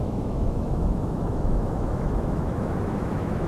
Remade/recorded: remade